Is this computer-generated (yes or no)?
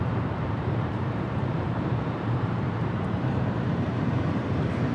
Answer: yes